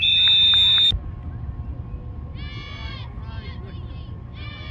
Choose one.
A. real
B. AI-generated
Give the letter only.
A